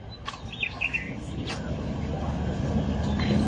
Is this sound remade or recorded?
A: recorded